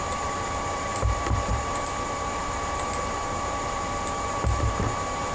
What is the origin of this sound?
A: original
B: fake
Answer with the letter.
B